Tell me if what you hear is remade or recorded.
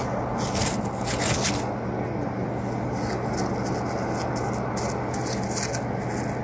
recorded